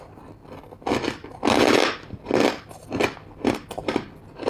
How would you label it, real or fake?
real